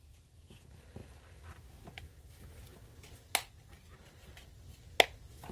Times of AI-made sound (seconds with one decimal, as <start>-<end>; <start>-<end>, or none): 4.3-4.8